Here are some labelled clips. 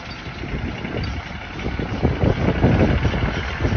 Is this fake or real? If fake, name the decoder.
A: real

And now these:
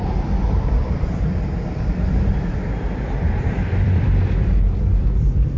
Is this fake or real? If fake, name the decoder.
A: fake, vocoder, BigVGAN v2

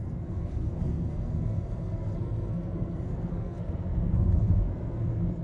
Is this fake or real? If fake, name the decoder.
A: fake, codec, SNAC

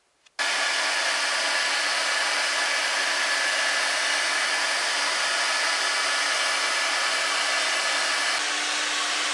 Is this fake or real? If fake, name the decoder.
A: real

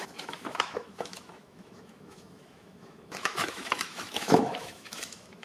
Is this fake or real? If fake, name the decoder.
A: fake, autoencoder, DAC-VAE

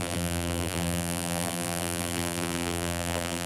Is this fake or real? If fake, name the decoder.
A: fake, vocoder, BigVGAN v2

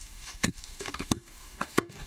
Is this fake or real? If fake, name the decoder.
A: fake, codec, DAC